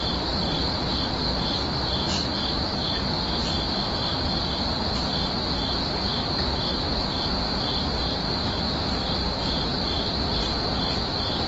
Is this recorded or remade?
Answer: recorded